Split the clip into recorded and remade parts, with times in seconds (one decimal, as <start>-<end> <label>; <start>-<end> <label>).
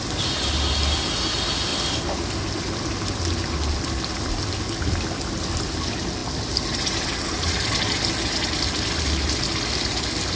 0.0-10.4 recorded